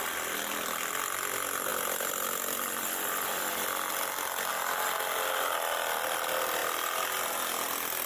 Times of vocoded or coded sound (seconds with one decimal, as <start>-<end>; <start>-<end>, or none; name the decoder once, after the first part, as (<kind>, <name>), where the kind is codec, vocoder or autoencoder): 1.7-4.5 (vocoder, BigVGAN v2); 6.6-7.2